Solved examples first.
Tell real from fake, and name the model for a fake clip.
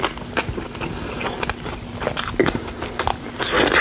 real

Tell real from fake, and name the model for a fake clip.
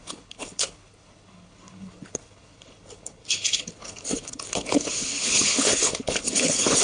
fake, codec, HILCodec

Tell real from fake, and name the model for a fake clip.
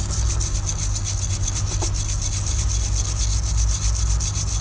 real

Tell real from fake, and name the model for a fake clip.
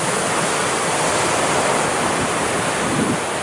real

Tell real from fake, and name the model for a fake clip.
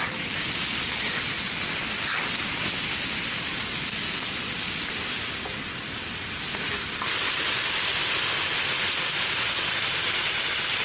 real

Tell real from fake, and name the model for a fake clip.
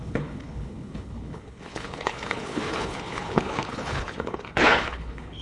fake, codec, HILCodec